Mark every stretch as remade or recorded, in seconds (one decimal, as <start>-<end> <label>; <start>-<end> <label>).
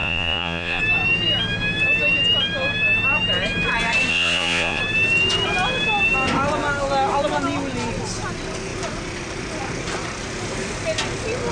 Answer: 0.0-0.8 remade; 0.8-4.1 recorded; 4.1-4.8 remade; 4.8-11.5 recorded